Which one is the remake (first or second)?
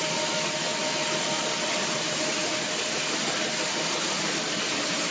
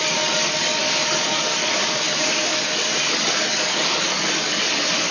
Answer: second